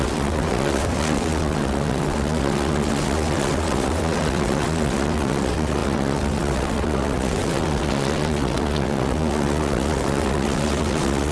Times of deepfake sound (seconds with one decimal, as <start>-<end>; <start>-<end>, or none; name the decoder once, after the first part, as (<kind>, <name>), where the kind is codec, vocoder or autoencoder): 0.0-11.3 (vocoder, WaveNeXt)